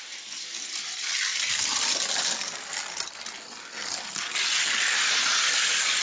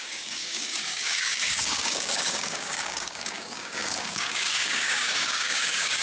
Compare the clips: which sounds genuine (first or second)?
first